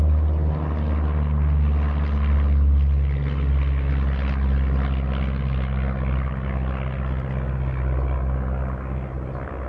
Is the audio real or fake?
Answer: real